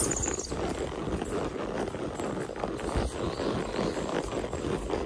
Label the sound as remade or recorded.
recorded